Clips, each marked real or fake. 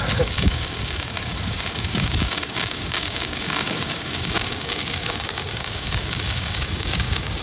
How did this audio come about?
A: fake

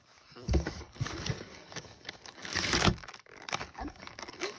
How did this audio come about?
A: fake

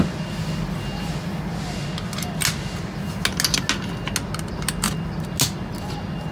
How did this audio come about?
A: real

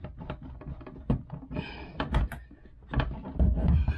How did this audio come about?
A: real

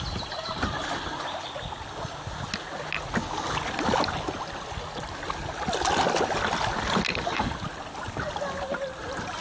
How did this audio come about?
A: real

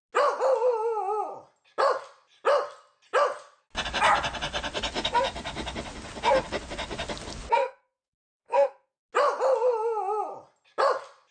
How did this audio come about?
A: real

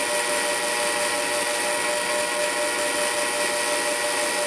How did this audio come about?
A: real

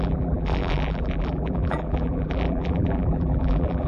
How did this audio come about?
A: fake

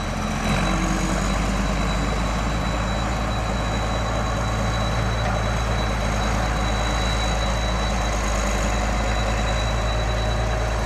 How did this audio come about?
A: real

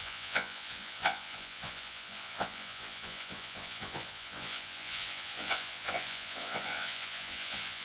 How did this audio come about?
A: fake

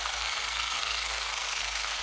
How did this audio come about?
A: fake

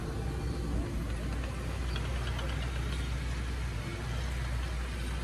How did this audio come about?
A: real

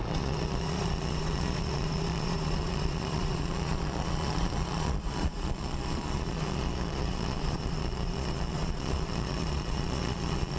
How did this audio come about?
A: fake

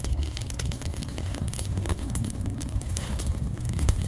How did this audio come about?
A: fake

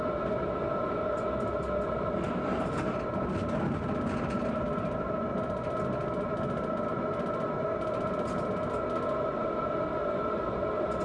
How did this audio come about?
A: real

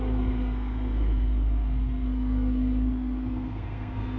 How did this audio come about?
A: fake